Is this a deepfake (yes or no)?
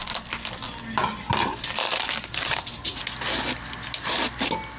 no